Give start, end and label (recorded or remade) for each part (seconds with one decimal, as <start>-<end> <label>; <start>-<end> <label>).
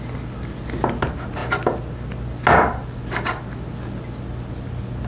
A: 0.0-5.1 recorded